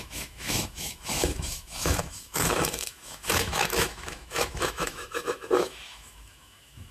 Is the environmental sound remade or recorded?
remade